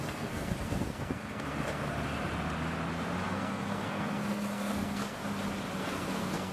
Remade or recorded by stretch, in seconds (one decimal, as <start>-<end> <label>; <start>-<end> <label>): 0.0-1.8 remade; 1.8-3.3 recorded; 3.3-5.2 remade; 5.2-5.8 recorded; 5.8-6.5 remade